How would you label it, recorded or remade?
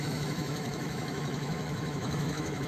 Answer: remade